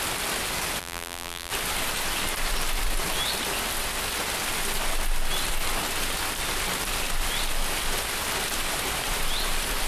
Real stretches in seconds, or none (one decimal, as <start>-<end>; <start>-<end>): 0.0-0.8; 1.5-9.9